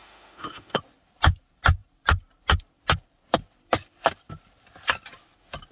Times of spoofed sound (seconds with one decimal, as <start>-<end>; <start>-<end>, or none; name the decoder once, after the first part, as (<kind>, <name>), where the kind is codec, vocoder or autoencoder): 0.0-0.8 (autoencoder, DAC-VAE)